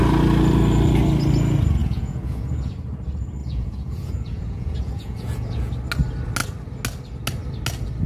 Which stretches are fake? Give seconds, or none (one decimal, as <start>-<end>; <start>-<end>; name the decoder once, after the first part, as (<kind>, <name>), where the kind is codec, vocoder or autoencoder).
1.8-2.7 (vocoder, Vocos); 3.4-5.7